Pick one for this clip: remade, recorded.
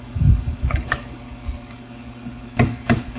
remade